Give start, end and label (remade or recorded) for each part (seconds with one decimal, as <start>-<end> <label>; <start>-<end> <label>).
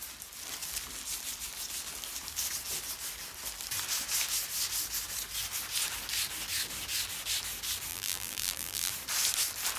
0.0-7.9 recorded; 7.9-8.9 remade; 8.9-9.8 recorded